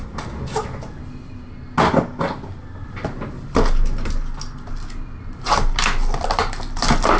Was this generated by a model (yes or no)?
no